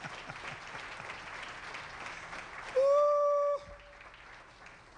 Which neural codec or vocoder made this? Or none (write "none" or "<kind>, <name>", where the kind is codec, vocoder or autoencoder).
none